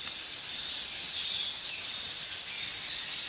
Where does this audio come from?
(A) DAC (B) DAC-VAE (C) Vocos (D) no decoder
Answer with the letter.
D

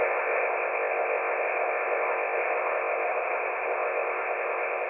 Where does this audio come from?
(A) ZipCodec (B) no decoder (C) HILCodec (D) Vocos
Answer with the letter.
A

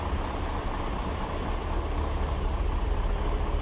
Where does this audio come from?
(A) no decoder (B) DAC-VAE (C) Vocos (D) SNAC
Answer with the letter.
A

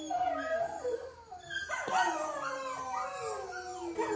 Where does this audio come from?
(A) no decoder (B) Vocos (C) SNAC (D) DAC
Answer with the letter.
A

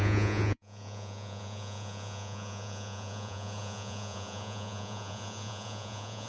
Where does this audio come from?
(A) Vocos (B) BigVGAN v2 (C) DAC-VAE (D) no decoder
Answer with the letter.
A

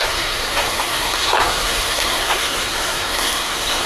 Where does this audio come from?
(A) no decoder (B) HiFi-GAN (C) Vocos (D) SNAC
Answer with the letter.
D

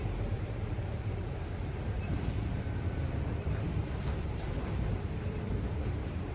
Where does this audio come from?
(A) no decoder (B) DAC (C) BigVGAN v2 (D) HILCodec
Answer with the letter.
C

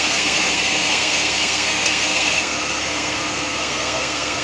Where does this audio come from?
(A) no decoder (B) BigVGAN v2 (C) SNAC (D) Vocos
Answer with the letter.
C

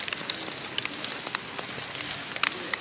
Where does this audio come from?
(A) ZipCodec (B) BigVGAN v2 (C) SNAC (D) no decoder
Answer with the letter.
D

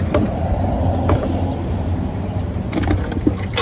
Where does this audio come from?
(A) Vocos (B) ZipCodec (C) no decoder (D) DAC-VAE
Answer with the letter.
C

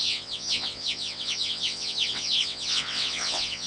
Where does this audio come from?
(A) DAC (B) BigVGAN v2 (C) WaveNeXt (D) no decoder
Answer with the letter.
C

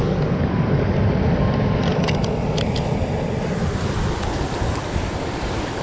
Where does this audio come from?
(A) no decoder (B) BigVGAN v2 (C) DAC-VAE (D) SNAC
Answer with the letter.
B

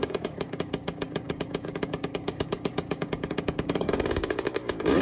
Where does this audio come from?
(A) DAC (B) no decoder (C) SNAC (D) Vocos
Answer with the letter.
A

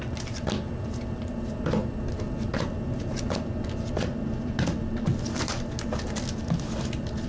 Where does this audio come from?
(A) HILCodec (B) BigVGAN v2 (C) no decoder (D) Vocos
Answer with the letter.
C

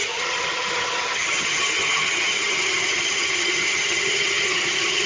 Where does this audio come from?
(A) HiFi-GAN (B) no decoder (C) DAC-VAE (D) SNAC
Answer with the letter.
A